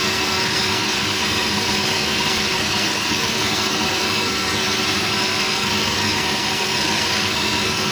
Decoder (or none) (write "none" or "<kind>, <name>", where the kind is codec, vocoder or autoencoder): codec, SNAC